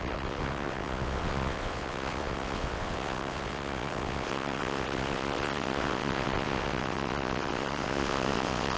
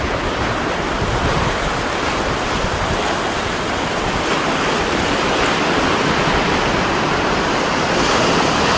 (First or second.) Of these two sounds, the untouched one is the second